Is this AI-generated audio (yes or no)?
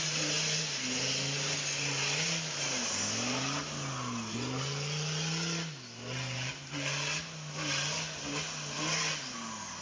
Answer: no